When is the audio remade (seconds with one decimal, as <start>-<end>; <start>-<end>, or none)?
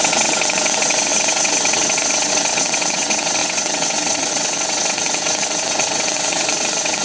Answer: 0.0-7.0